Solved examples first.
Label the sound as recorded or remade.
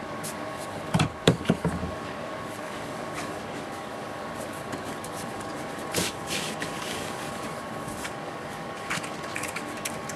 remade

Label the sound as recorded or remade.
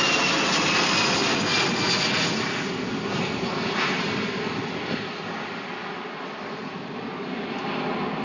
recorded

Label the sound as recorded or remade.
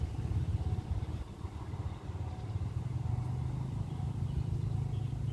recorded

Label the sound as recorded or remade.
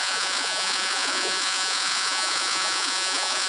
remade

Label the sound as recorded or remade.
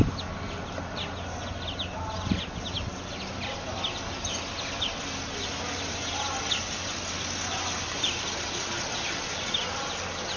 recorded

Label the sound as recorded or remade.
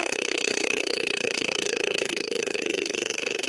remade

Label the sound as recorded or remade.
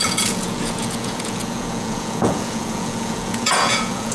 remade